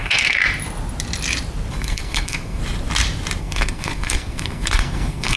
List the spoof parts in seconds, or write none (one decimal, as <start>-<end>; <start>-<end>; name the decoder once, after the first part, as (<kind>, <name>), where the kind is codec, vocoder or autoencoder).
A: 0.0-0.4 (codec, SNAC); 1.7-2.6; 3.4-5.4